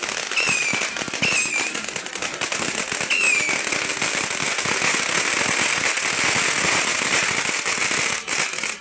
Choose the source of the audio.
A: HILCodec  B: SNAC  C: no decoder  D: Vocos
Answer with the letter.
C